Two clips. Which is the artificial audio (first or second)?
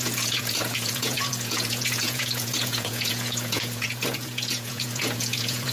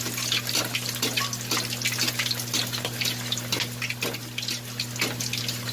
first